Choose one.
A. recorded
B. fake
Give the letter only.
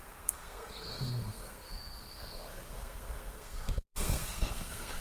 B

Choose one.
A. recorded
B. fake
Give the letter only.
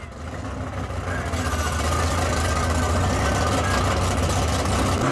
A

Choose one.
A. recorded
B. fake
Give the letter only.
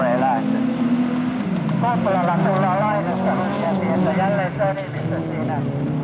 A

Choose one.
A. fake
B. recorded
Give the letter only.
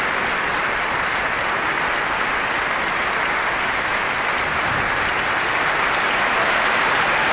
B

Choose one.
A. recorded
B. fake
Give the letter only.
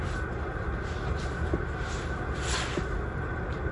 A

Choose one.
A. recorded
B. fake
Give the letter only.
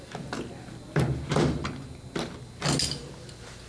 A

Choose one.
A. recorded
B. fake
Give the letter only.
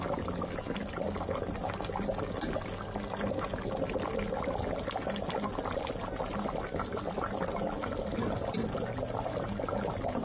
A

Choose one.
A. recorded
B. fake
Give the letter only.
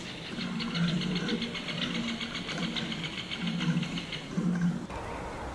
A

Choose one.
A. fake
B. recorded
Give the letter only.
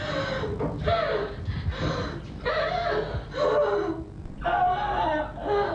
B